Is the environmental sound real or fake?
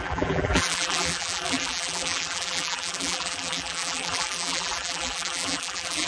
fake